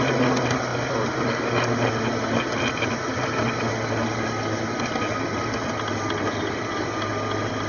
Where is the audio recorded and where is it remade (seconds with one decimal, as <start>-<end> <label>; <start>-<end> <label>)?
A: 0.0-7.7 recorded